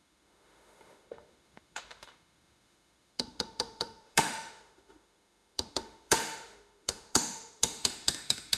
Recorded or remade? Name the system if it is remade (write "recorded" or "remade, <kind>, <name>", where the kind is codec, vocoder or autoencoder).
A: remade, autoencoder, DAC-VAE